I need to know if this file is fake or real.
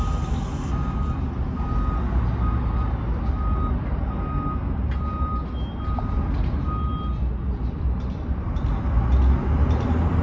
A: real